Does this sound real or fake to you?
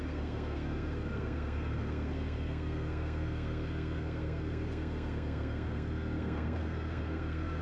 fake